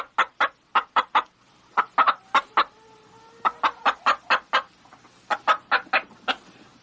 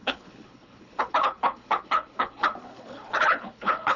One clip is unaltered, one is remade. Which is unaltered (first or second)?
first